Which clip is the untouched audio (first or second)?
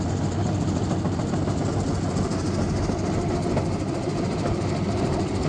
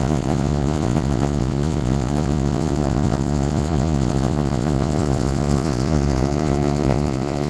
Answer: first